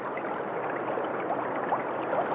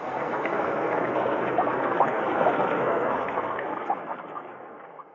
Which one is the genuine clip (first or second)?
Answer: first